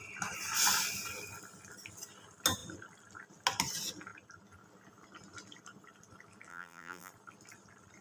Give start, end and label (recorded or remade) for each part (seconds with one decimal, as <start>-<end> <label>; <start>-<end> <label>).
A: 0.0-6.5 recorded; 6.5-7.1 remade; 7.1-8.0 recorded